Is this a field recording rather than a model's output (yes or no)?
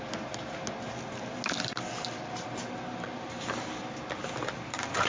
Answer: yes